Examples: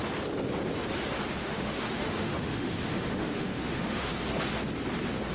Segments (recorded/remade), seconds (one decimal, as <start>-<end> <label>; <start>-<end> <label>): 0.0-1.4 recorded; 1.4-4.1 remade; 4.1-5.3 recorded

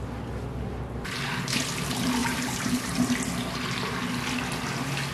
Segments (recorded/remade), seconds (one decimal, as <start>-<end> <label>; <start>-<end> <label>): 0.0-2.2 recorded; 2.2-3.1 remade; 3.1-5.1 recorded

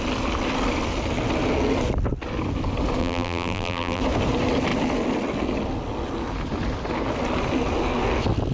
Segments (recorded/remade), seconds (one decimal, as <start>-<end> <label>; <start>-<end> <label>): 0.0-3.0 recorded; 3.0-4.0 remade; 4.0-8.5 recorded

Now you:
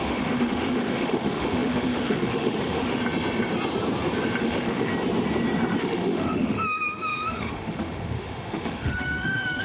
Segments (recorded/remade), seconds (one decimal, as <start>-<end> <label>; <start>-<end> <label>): 0.0-3.0 remade; 3.0-4.4 recorded; 4.4-4.9 remade; 4.9-5.8 recorded; 5.8-9.6 remade

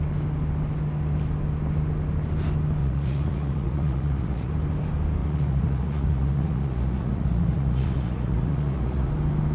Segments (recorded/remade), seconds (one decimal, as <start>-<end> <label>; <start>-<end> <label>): 0.0-2.8 recorded; 2.8-4.5 remade; 4.5-5.2 recorded; 5.2-9.1 remade; 9.1-9.5 recorded